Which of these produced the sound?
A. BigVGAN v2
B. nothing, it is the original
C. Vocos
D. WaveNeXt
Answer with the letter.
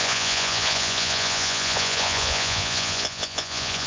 C